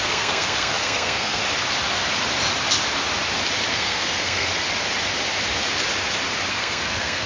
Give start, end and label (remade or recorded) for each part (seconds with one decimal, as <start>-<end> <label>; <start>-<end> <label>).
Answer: 0.0-1.4 remade; 1.4-3.7 recorded; 3.7-4.5 remade; 4.5-6.5 recorded; 6.5-7.3 remade